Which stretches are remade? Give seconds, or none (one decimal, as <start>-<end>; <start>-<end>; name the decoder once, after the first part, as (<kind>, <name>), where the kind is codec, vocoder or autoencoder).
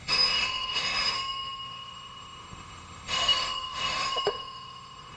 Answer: 0.0-5.2 (autoencoder, DAC-VAE)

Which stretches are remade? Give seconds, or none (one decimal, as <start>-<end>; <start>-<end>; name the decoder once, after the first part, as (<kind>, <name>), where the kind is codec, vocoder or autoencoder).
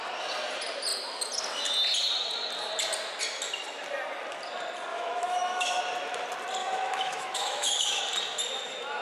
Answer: 4.9-5.8 (autoencoder, DAC-VAE); 6.6-8.0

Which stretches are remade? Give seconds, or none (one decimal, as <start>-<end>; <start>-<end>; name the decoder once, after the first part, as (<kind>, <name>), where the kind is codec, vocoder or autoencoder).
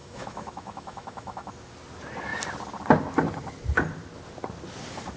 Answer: 0.0-1.5 (autoencoder, DAC-VAE)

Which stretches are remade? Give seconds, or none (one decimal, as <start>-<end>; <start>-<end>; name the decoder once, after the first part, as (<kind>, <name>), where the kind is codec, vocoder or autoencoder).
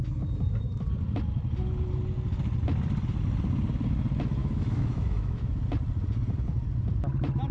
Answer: 4.4-5.6 (autoencoder, DAC-VAE)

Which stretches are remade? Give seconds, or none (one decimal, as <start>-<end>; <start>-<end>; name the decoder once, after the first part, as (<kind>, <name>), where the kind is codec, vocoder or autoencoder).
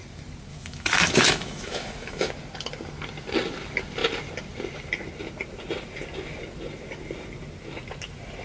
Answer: 0.5-2.3 (autoencoder, DAC-VAE)